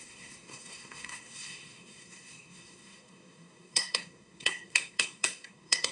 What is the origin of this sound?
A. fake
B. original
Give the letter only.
A